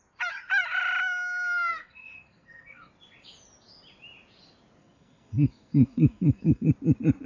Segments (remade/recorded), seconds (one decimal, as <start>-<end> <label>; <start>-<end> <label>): 0.0-1.7 recorded; 1.7-2.9 remade; 2.9-4.8 recorded; 4.8-6.7 remade; 6.7-7.3 recorded